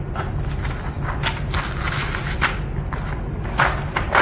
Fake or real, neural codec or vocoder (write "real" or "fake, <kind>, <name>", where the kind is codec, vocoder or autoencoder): real